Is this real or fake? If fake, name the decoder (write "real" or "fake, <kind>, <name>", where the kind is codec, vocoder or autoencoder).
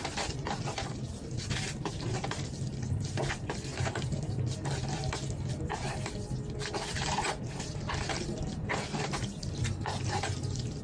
real